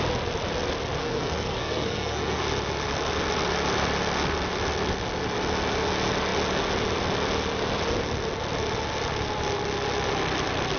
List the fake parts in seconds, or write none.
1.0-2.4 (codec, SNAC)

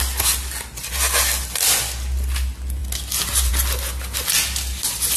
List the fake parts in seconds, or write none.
none

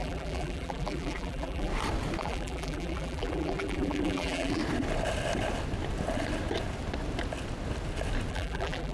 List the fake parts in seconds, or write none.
0.0-1.7 (vocoder, BigVGAN v2); 2.2-4.6; 8.3-8.9